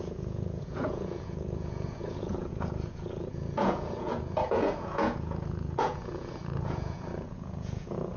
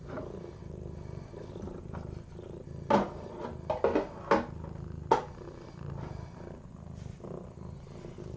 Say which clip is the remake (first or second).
first